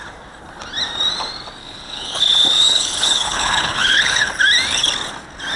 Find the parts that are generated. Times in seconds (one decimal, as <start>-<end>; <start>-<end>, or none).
1.6-4.3